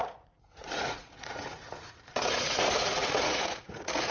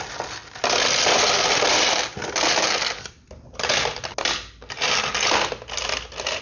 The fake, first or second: first